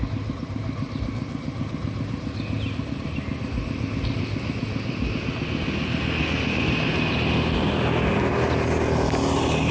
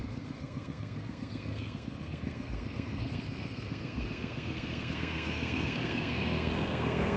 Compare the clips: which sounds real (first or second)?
first